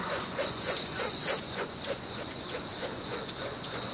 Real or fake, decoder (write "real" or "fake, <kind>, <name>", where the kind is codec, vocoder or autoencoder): fake, vocoder, Vocos